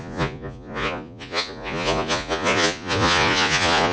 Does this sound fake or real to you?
fake